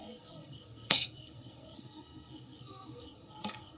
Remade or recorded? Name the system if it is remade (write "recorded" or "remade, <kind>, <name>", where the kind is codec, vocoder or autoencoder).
remade, codec, SNAC